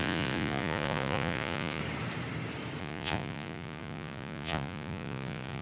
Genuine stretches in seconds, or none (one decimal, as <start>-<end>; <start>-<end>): 1.8-2.8